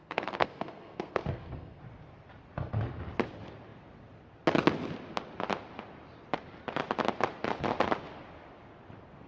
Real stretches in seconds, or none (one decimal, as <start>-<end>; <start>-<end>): 1.8-9.3